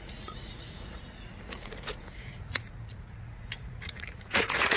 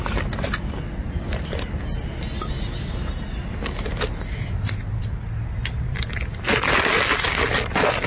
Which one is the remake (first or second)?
first